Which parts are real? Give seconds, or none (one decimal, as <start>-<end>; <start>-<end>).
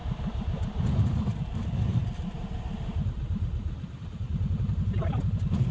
0.0-5.7